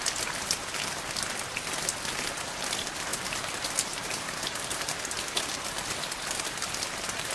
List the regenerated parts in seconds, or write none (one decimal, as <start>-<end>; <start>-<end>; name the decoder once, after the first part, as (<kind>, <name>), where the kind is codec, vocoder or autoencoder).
none